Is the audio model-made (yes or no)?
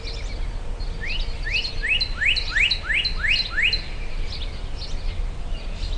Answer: no